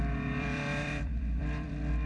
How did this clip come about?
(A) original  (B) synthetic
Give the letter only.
B